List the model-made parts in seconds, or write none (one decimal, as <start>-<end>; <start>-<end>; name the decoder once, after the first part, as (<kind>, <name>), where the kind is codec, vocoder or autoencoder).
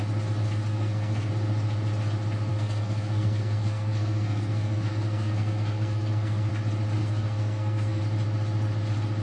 0.7-1.3 (codec, SNAC); 2.5-6.5; 7.0-8.0